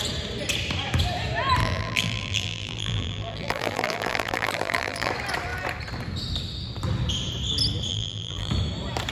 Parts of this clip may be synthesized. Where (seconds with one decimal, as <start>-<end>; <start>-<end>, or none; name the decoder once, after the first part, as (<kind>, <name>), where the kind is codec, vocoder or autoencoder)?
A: 1.6-5.1 (vocoder, BigVGAN v2); 7.9-8.5